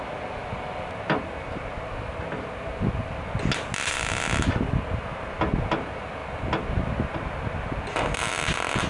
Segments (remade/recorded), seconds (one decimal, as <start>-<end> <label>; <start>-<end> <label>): 0.0-8.9 recorded